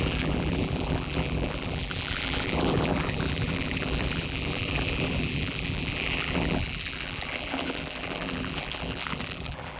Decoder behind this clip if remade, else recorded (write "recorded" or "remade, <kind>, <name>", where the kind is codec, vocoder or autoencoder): remade, vocoder, BigVGAN v2